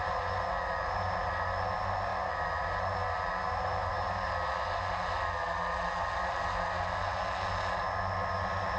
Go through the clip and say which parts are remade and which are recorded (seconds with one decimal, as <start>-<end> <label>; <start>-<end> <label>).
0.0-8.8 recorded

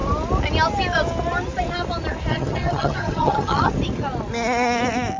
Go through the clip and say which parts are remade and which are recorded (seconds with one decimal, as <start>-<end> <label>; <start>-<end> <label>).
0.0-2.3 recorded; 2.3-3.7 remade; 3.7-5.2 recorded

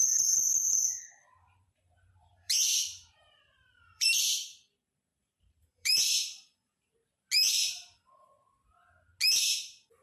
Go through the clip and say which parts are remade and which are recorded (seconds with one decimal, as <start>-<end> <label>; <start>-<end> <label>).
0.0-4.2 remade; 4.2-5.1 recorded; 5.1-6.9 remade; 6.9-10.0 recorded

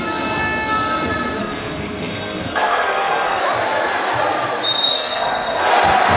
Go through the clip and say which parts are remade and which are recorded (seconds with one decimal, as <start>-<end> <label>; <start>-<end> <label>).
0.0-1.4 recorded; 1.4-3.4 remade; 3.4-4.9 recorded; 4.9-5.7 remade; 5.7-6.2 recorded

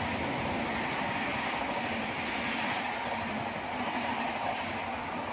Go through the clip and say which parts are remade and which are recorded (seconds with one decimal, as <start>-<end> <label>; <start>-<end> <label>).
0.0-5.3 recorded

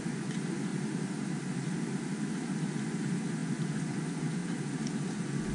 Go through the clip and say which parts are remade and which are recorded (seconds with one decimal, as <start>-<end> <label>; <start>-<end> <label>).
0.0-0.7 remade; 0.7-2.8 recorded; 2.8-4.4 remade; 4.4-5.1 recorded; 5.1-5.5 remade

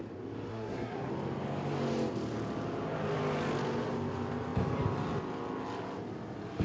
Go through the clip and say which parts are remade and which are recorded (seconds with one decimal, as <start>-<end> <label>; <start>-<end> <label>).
0.0-0.5 recorded; 0.5-1.1 remade; 1.1-6.6 recorded